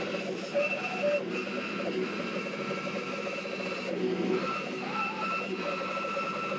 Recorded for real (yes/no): yes